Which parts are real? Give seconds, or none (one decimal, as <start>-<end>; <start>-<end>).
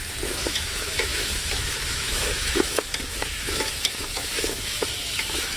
none